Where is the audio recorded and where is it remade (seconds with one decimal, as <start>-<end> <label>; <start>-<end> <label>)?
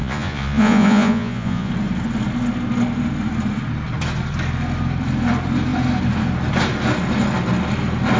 0.0-1.7 remade; 1.7-8.2 recorded